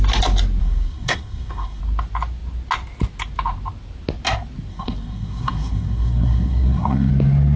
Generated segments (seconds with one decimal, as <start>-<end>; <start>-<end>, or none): 0.6-1.8; 4.7-7.1